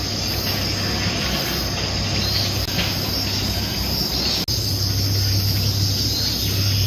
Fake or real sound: real